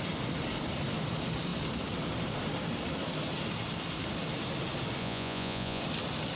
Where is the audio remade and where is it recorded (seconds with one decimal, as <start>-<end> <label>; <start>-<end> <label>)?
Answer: 0.0-5.0 recorded; 5.0-5.8 remade; 5.8-6.4 recorded